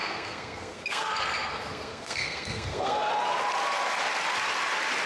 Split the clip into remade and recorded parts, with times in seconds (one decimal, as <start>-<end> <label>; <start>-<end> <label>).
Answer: 0.0-3.1 remade; 3.1-5.1 recorded